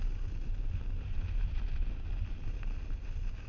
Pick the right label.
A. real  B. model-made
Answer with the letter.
A